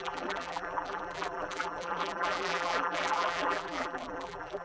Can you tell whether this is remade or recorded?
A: remade